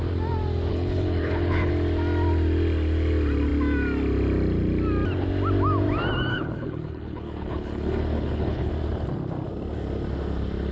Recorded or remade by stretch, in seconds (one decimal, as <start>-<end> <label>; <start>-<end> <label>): 0.0-0.7 recorded; 0.7-1.7 remade; 1.7-6.3 recorded; 6.3-8.7 remade; 8.7-10.7 recorded